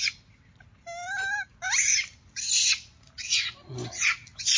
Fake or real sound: real